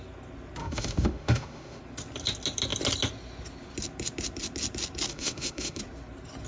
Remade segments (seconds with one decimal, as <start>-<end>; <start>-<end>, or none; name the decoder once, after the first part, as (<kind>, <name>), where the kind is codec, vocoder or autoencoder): 0.6-1.8 (autoencoder, DAC-VAE); 5.1-5.8